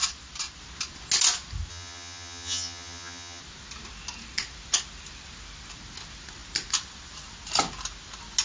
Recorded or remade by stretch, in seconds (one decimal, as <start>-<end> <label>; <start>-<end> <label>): 0.0-1.7 recorded; 1.7-3.4 remade; 3.4-8.4 recorded